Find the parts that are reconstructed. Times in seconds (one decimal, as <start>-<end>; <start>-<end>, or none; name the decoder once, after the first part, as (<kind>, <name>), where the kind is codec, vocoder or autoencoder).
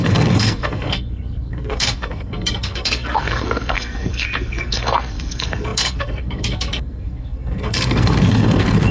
0.0-8.9 (codec, SNAC)